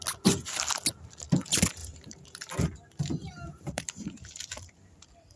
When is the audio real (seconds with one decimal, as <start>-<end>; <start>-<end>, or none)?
0.0-1.8; 2.5-3.2; 4.4-5.4